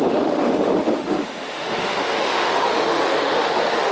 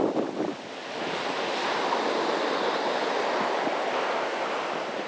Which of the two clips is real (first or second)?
second